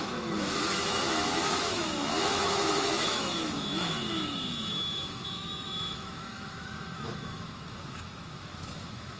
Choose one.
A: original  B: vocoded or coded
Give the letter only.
B